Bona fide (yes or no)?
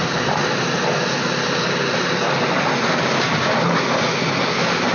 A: yes